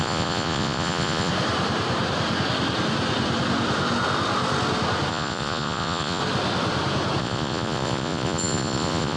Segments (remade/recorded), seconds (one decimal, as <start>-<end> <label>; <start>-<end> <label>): 0.0-1.3 remade; 1.3-5.1 recorded; 5.1-6.2 remade; 6.2-7.2 recorded; 7.2-9.2 remade